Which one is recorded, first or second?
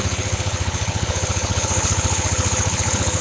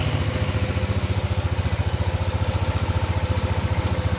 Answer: second